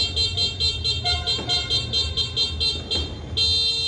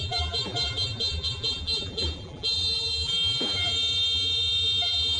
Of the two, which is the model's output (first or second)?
second